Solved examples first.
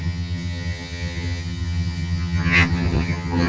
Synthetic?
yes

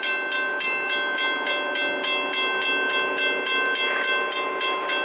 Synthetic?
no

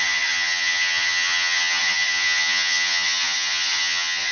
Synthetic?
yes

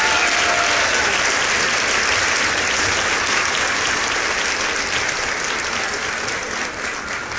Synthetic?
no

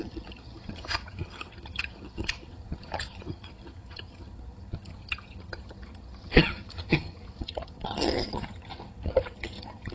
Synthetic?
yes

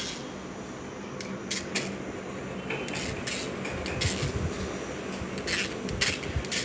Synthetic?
no